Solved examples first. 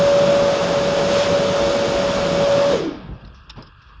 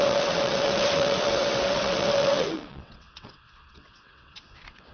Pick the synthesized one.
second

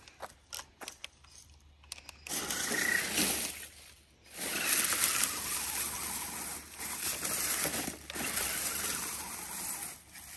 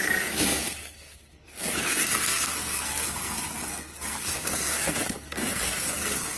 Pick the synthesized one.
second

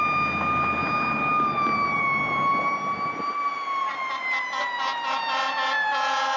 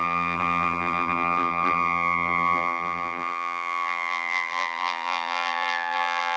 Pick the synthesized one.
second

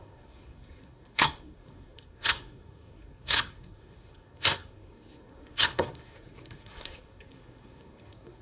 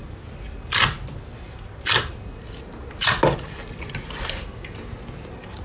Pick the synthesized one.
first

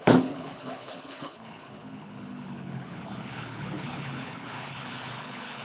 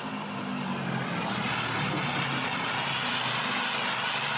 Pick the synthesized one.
first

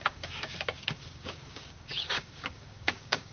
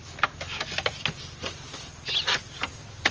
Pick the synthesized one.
first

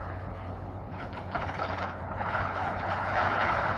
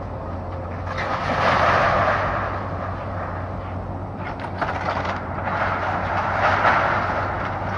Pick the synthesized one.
first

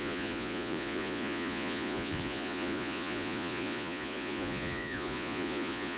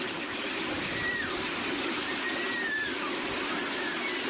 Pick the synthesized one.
first